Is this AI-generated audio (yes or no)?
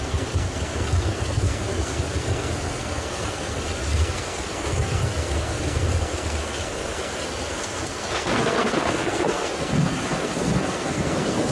yes